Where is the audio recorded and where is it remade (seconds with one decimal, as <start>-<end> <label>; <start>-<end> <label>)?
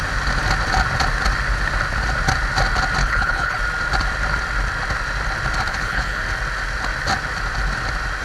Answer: 0.0-3.0 recorded; 3.0-3.6 remade; 3.6-5.7 recorded; 5.7-6.2 remade; 6.2-8.2 recorded